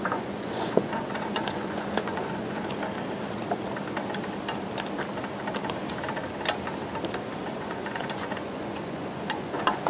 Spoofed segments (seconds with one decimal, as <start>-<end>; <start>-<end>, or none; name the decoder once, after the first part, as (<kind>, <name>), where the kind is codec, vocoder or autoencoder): 0.0-2.7 (vocoder, Vocos); 7.4-9.9